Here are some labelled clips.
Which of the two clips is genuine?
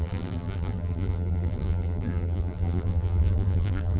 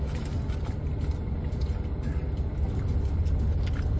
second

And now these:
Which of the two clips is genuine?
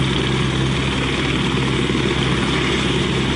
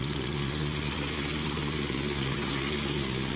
first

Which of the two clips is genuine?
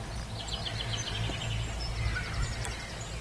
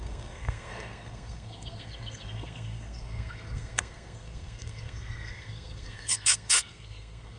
first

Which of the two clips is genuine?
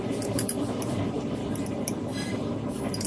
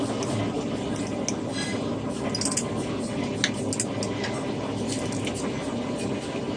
second